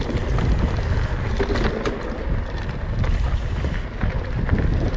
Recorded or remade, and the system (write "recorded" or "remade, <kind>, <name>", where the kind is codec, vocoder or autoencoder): recorded